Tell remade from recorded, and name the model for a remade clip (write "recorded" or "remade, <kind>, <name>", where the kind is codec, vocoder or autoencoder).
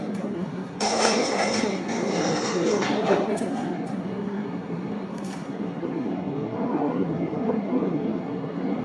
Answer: remade, codec, SNAC